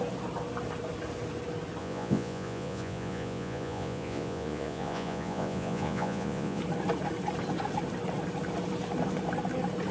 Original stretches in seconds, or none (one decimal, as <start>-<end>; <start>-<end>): 0.0-1.8; 6.6-9.9